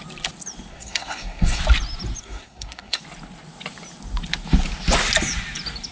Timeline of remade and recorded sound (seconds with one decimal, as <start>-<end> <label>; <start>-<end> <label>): 0.0-0.7 recorded; 0.7-1.6 remade; 1.6-2.2 recorded; 2.2-3.0 remade; 3.0-5.9 recorded